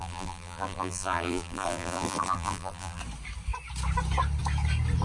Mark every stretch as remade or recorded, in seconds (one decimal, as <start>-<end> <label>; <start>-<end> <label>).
0.0-3.0 remade; 3.0-5.0 recorded